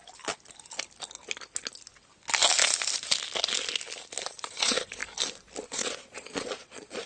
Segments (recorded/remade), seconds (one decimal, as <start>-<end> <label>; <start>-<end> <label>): 0.0-4.3 recorded; 4.3-5.0 remade; 5.0-5.7 recorded; 5.7-7.1 remade